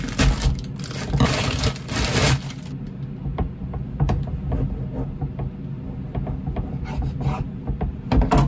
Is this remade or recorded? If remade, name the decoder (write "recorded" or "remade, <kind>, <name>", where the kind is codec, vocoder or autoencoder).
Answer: recorded